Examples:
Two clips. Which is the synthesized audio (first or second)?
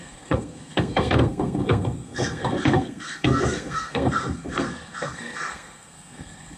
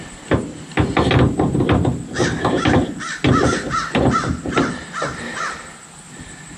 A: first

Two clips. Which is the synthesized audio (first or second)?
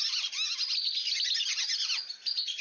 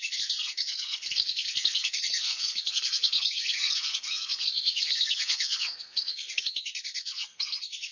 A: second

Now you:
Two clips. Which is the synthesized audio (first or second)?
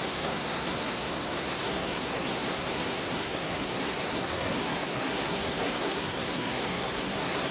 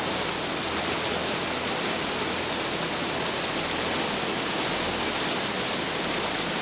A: first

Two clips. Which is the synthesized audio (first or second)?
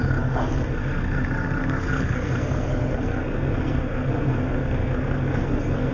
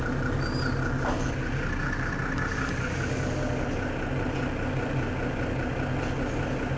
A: first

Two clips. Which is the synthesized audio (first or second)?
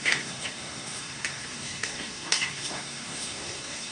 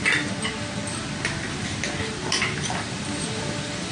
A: first